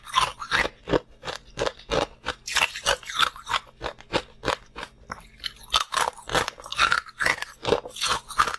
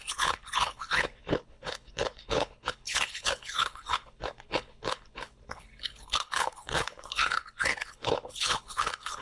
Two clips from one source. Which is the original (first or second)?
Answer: first